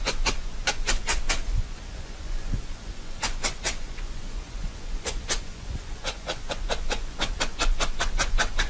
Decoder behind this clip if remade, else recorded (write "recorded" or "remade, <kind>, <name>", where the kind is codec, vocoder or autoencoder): remade, vocoder, Vocos